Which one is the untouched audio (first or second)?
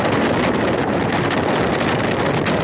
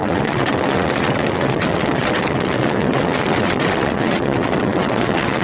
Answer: first